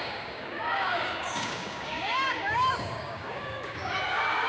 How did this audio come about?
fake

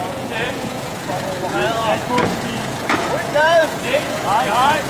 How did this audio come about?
fake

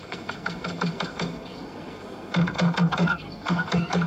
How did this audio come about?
fake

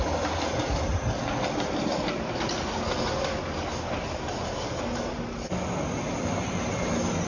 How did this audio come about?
real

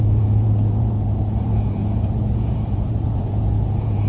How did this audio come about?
fake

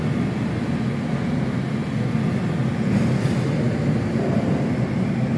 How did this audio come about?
real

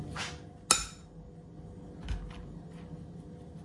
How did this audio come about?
real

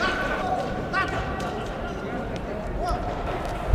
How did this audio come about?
fake